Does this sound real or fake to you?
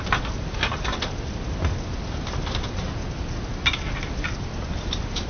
real